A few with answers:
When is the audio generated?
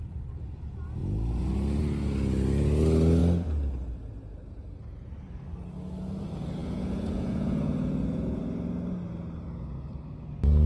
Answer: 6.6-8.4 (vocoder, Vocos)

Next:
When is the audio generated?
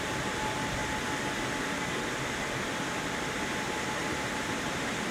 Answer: 0.0-0.8 (vocoder, BigVGAN v2); 3.9-5.1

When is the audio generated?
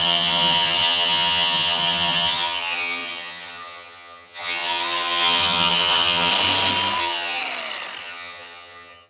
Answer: 0.0-6.3 (vocoder, HiFi-GAN); 7.0-7.4; 8.0-9.1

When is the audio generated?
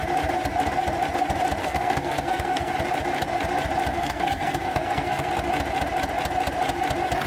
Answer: 1.6-2.7 (codec, SNAC); 3.9-5.3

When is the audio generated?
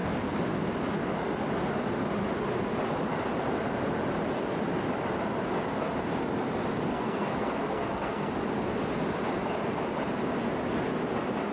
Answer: 6.9-8.3 (codec, SNAC)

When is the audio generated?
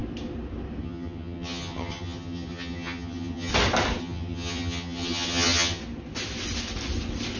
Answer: 0.8-3.5 (vocoder, HiFi-GAN); 4.0-5.8